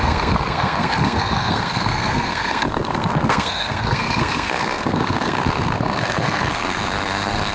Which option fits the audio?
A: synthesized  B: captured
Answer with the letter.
A